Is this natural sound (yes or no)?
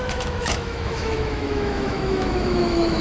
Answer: no